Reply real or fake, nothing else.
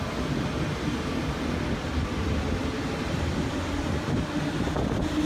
real